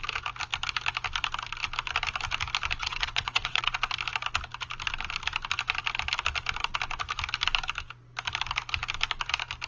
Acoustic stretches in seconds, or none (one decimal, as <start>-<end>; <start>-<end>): 0.0-2.8; 3.7-9.7